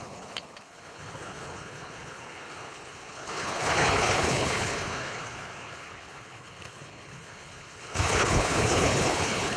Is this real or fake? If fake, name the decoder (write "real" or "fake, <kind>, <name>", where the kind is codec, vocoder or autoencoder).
fake, codec, HILCodec